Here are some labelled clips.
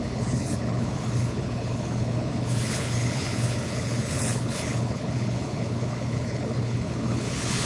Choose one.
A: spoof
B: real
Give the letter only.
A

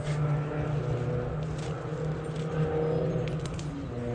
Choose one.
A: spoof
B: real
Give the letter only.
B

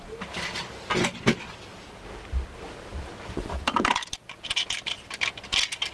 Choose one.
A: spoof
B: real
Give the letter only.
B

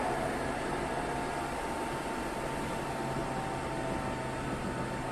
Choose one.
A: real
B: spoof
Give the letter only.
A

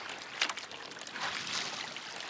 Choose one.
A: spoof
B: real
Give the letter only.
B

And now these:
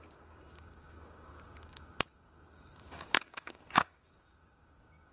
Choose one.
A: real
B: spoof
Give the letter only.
B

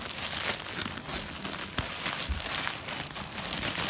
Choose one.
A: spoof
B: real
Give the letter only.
B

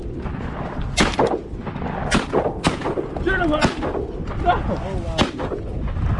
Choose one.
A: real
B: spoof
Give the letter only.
A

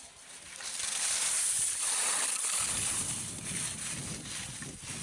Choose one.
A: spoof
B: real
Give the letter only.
B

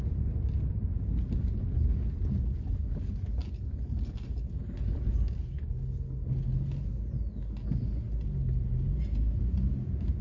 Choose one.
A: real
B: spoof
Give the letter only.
A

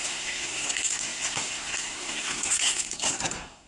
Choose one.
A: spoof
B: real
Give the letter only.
A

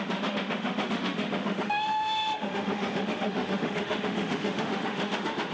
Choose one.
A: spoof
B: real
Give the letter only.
A